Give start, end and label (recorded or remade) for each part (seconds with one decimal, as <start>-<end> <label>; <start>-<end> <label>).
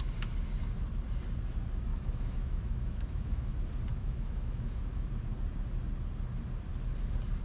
0.0-1.9 recorded; 1.9-3.5 remade; 3.5-3.9 recorded; 3.9-5.1 remade; 5.1-7.4 recorded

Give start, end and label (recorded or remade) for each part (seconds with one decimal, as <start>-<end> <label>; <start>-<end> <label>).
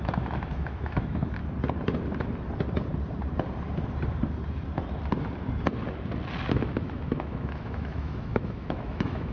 0.0-1.4 remade; 1.4-6.5 recorded; 6.5-9.3 remade